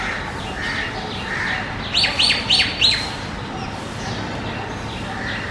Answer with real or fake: real